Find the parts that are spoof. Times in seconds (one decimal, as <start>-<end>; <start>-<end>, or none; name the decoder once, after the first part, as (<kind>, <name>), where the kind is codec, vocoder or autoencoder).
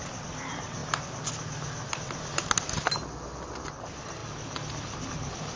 none